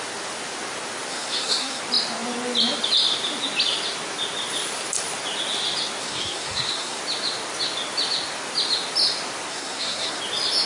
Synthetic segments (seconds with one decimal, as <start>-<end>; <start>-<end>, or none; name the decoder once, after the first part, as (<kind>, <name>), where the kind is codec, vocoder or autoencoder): 1.1-1.8 (codec, SNAC); 6.0-7.0; 9.5-10.2